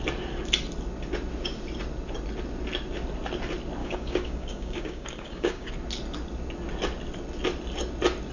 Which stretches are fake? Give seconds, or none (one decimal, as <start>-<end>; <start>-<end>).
3.8-5.7